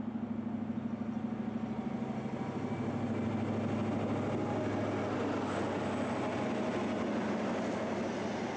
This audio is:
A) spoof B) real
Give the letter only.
B